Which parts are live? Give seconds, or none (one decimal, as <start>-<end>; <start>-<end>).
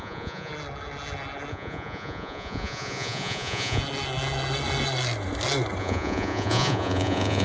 0.5-1.5; 3.8-5.8